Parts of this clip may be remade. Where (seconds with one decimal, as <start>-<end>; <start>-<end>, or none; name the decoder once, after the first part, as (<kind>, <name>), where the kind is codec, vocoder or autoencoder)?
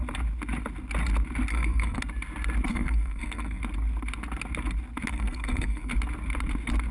1.5-2.0 (codec, SNAC); 2.7-3.6; 5.1-5.9